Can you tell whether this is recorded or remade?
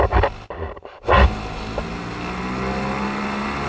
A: recorded